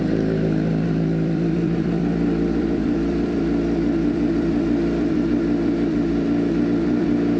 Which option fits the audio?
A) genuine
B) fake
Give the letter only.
B